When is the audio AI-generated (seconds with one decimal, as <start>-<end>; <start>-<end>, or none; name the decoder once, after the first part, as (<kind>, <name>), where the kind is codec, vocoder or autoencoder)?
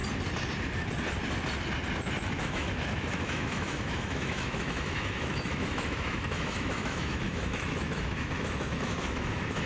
2.4-9.7 (autoencoder, DAC-VAE)